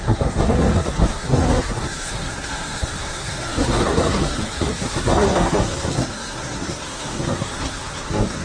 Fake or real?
fake